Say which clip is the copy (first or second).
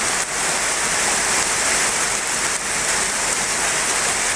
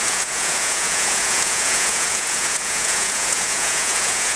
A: second